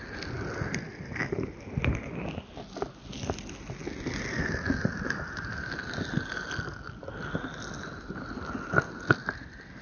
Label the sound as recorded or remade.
recorded